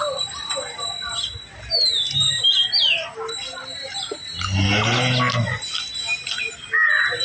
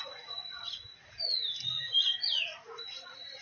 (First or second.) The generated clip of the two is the second